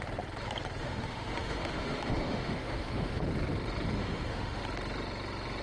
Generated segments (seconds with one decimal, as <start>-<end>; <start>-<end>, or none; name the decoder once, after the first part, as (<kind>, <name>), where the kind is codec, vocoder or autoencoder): 0.8-3.2 (autoencoder, DAC-VAE); 4.0-4.6